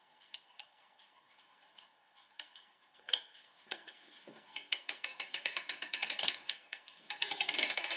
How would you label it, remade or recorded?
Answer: remade